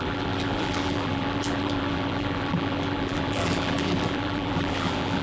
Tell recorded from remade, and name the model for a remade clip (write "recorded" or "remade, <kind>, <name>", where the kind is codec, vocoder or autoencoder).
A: remade, vocoder, BigVGAN v2